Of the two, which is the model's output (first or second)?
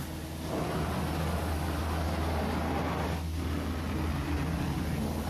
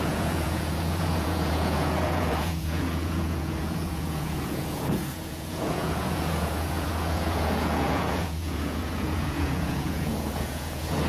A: second